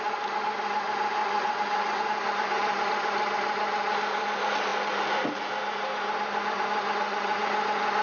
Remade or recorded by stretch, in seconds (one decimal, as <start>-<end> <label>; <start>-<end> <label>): 0.0-1.2 recorded; 1.2-2.0 remade; 2.0-7.0 recorded; 7.0-7.5 remade; 7.5-8.0 recorded